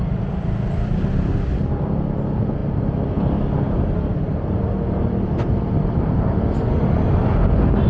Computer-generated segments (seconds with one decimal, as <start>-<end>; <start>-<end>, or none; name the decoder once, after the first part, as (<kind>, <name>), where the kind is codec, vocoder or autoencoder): none